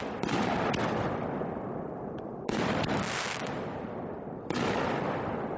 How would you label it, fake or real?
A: real